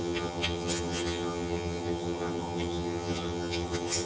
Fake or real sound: fake